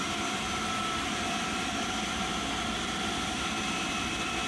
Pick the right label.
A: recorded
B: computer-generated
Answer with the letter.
A